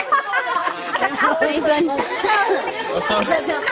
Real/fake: real